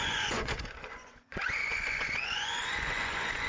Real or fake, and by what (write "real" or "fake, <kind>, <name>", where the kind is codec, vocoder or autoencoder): fake, vocoder, Vocos